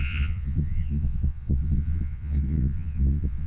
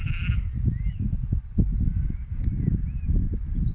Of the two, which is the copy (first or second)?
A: first